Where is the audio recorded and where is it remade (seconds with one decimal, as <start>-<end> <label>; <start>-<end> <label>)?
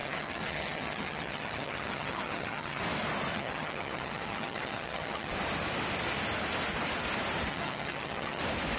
0.0-2.8 remade; 2.8-3.3 recorded; 3.3-5.3 remade; 5.3-7.5 recorded; 7.5-8.4 remade; 8.4-8.8 recorded